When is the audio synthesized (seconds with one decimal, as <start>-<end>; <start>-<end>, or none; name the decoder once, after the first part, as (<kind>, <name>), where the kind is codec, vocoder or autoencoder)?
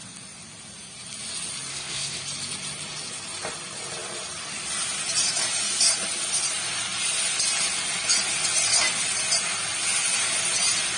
1.7-2.2 (codec, SNAC)